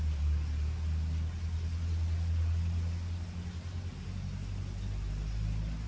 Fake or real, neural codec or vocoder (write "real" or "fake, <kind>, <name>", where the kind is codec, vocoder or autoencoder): real